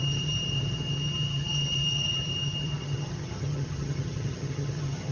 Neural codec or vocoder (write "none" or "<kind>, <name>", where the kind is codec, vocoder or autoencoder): vocoder, HiFi-GAN